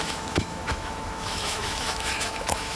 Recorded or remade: remade